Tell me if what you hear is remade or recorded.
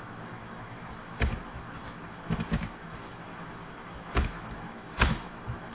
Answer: remade